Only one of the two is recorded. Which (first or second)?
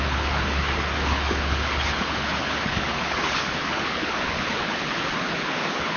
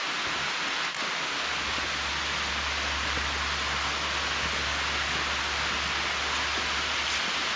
second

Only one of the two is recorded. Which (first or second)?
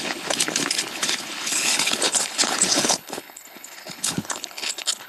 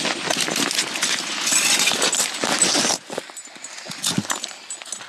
second